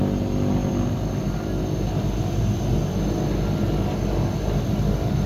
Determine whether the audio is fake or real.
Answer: real